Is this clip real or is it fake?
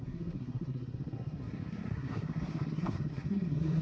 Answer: fake